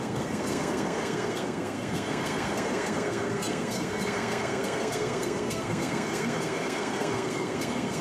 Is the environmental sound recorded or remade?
remade